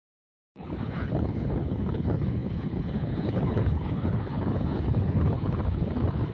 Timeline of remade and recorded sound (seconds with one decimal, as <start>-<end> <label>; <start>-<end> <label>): 0.0-6.3 remade